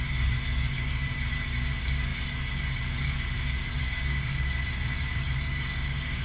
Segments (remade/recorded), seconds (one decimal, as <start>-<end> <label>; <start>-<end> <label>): 0.0-6.2 remade